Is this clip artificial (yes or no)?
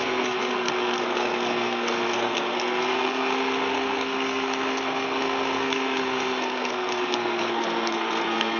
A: yes